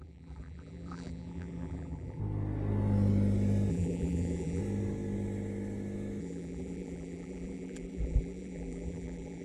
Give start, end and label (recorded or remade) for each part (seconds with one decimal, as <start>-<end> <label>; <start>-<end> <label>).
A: 0.0-2.2 remade; 2.2-3.7 recorded; 3.7-4.6 remade; 4.6-6.2 recorded; 6.2-9.4 remade